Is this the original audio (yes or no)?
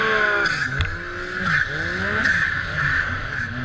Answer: yes